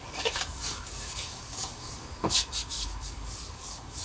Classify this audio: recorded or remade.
remade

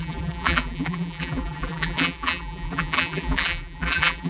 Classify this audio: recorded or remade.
remade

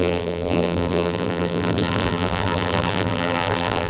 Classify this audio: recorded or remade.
remade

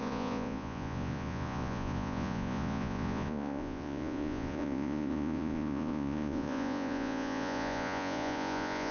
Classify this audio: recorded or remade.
remade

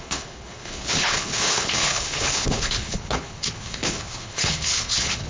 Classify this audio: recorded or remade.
remade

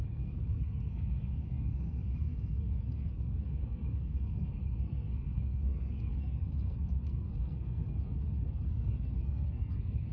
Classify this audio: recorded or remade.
remade